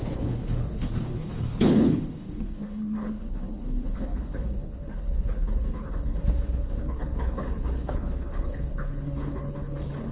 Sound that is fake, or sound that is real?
fake